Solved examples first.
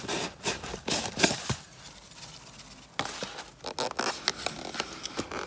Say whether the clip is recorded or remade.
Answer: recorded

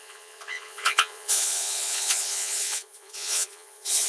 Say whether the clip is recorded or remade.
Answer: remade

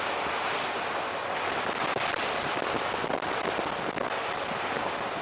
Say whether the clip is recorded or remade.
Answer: recorded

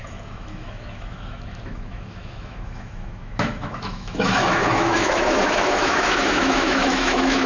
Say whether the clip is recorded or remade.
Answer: remade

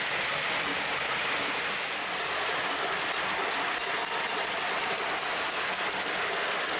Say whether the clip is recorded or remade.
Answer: recorded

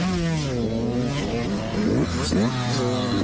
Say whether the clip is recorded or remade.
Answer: recorded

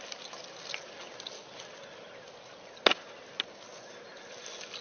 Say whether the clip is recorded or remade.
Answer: recorded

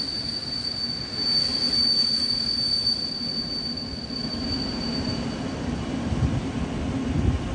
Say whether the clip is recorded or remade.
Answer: recorded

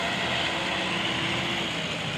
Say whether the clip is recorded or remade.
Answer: recorded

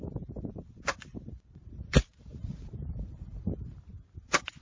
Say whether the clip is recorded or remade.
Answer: remade